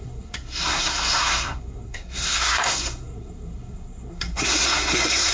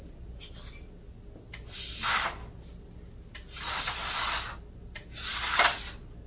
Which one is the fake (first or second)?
first